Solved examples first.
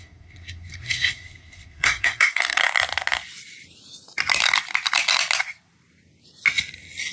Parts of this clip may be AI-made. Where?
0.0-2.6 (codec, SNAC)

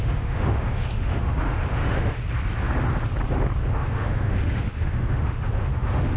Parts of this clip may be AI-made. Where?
0.0-2.2 (autoencoder, DAC-VAE); 3.7-6.2

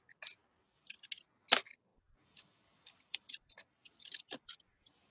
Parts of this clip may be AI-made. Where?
1.9-4.6 (vocoder, BigVGAN v2)

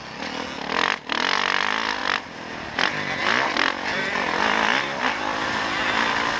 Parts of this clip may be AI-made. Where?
2.0-5.8 (vocoder, BigVGAN v2)

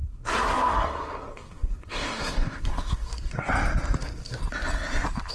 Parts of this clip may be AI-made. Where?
0.0-3.5 (codec, SNAC); 4.0-4.4

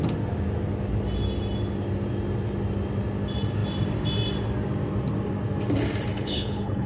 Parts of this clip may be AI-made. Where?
6.1-6.9 (codec, HILCodec)